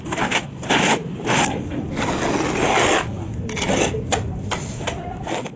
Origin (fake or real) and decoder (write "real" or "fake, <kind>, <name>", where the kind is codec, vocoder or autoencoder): real